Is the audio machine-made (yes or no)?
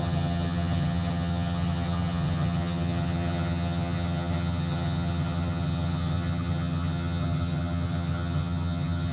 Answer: yes